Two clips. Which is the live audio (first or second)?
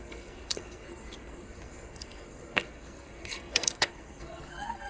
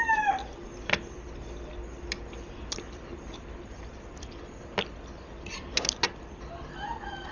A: second